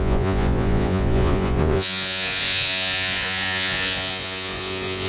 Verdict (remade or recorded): remade